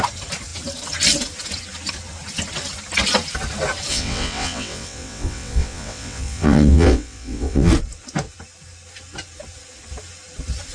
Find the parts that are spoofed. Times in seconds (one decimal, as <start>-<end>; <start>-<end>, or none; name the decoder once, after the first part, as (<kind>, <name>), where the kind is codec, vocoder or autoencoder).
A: 3.9-7.7 (vocoder, WaveNeXt)